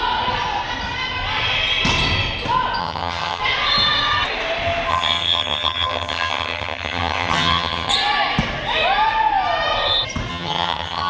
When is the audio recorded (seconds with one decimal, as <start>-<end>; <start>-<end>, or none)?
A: 0.0-2.8; 3.4-4.9; 7.9-10.3